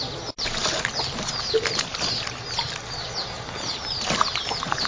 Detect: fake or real real